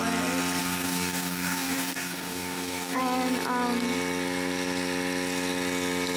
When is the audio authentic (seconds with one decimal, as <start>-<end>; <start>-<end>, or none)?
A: 0.0-0.6; 3.0-6.2